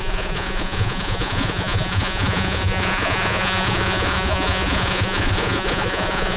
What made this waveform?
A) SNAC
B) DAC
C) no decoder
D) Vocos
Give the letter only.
D